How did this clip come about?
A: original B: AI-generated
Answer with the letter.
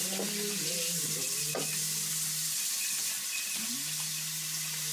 A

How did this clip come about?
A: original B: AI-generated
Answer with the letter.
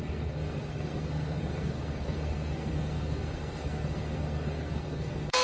B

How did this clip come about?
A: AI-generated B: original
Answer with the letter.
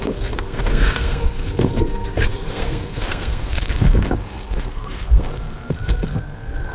A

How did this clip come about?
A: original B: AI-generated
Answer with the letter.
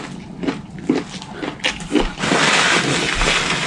A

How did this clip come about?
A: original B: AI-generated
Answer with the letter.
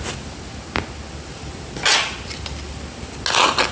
A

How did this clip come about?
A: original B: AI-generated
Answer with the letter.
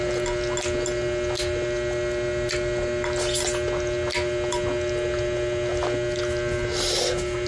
A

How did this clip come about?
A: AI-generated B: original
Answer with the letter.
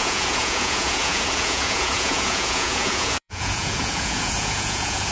A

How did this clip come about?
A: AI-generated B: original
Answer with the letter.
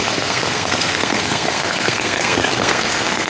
A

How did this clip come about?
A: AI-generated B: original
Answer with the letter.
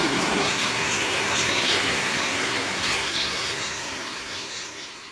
A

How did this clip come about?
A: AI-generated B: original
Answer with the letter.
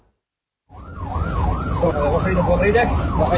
B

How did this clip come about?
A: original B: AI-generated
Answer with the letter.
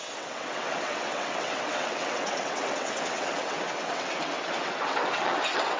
B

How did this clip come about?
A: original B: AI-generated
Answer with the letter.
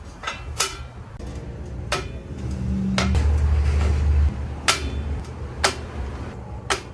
A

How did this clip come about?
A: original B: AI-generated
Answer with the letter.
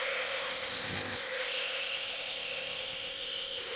B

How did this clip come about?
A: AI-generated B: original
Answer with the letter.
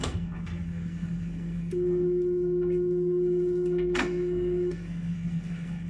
A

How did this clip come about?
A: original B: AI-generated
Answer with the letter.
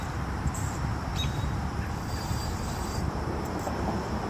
B